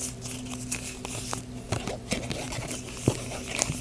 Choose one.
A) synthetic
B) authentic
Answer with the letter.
B